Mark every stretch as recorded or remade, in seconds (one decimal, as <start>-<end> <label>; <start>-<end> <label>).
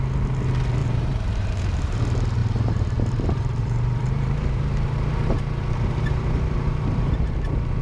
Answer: 0.0-0.8 recorded; 0.8-2.0 remade; 2.0-2.4 recorded; 2.4-7.1 remade; 7.1-7.8 recorded